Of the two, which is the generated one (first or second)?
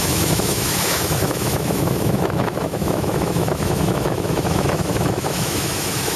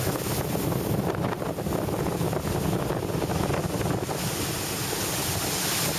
first